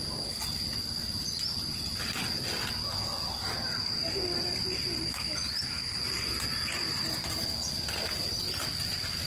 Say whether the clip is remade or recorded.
recorded